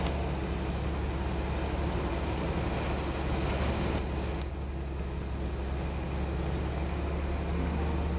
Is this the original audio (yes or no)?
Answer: yes